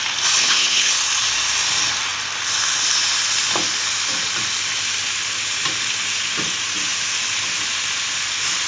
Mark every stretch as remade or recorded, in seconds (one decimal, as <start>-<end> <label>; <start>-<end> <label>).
0.0-0.4 recorded; 0.4-0.9 remade; 0.9-8.7 recorded

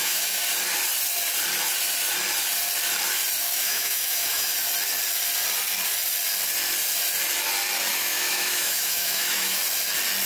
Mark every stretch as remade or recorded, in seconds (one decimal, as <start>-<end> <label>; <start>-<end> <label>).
0.0-0.4 remade; 0.4-3.4 recorded; 3.4-4.5 remade; 4.5-7.9 recorded; 7.9-9.6 remade; 9.6-10.3 recorded

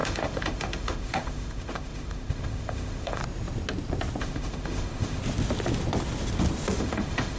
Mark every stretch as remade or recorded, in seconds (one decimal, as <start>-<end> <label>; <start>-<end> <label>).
0.0-3.2 remade; 3.2-4.2 recorded; 4.2-5.2 remade; 5.2-6.8 recorded; 6.8-7.4 remade

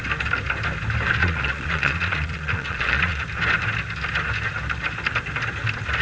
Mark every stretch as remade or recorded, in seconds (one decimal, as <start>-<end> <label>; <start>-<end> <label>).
0.0-1.2 recorded; 1.2-3.2 remade; 3.2-6.0 recorded